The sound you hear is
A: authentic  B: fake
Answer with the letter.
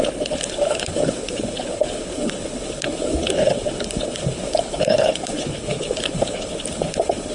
B